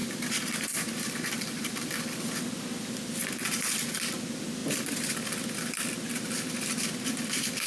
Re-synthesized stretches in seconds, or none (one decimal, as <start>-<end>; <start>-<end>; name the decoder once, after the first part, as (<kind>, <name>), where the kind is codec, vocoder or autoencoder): 0.0-1.9 (vocoder, BigVGAN v2)